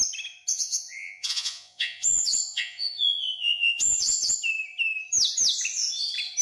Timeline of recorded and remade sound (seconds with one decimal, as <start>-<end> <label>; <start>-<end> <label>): 0.0-0.5 recorded; 0.5-4.3 remade; 4.3-6.4 recorded

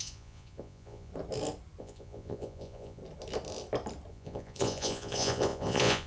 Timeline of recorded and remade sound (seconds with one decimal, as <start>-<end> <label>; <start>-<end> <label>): 0.0-1.1 remade; 1.1-1.8 recorded; 1.8-3.0 remade; 3.0-4.1 recorded; 4.1-6.1 remade

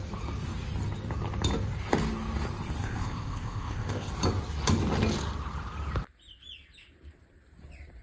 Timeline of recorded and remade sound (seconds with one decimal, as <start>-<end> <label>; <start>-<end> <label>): 0.0-2.8 recorded; 2.8-4.1 remade; 4.1-8.0 recorded

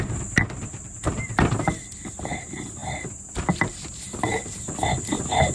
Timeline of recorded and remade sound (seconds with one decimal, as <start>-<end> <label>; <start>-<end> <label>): 0.0-5.5 recorded

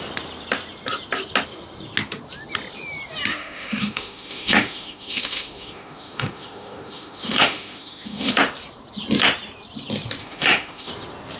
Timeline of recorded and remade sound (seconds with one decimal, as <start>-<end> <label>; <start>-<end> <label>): 0.0-3.3 recorded; 3.3-8.3 remade; 8.3-10.2 recorded; 10.2-10.9 remade; 10.9-11.4 recorded

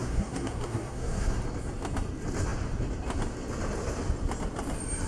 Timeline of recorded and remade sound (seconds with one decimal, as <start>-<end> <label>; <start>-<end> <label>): 0.0-1.4 remade; 1.4-5.1 recorded

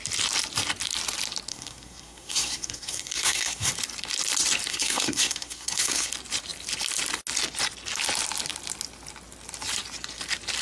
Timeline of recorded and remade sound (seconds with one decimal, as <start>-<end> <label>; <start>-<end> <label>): 0.0-1.5 recorded; 1.5-3.7 remade; 3.7-4.7 recorded; 4.7-6.1 remade; 6.1-10.6 recorded

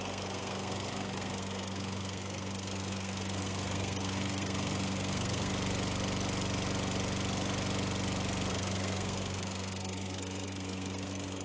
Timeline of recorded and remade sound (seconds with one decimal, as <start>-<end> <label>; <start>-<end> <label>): 0.0-5.5 remade; 5.5-8.5 recorded; 8.5-11.4 remade